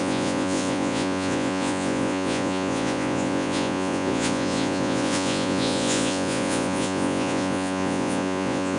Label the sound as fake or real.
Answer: fake